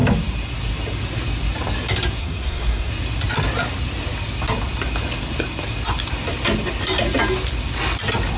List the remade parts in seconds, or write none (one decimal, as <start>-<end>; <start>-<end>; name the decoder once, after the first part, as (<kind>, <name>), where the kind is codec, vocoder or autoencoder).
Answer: 2.2-2.9 (codec, SNAC)